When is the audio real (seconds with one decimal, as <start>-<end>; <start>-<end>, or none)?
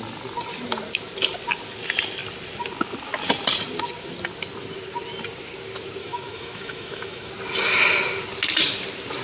0.0-6.0; 7.3-9.2